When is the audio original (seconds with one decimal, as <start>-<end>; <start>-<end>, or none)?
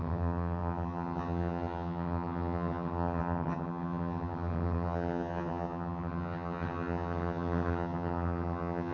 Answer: none